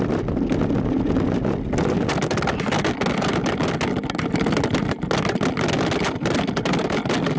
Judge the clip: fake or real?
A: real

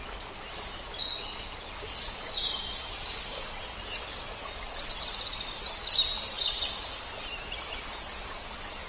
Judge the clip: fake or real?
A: real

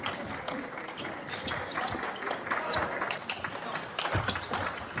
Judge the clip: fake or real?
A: real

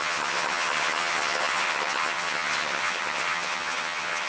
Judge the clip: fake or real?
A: fake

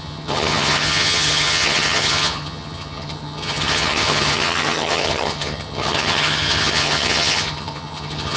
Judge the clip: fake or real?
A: fake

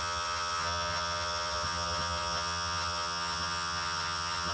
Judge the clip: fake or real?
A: fake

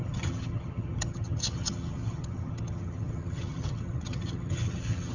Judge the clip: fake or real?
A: fake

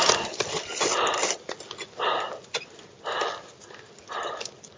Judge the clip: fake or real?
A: real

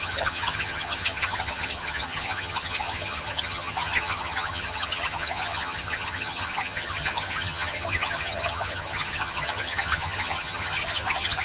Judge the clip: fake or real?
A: fake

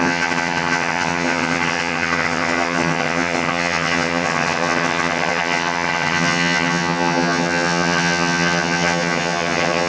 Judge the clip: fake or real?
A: fake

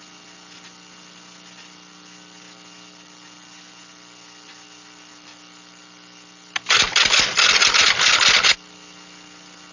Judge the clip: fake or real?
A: real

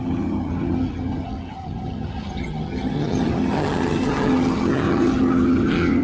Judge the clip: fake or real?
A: fake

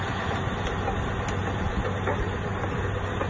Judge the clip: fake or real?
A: real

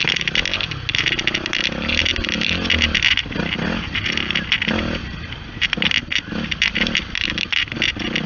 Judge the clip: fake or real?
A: real